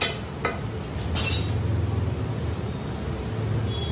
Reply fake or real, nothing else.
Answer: real